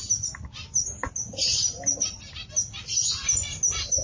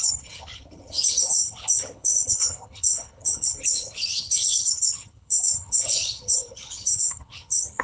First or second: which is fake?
second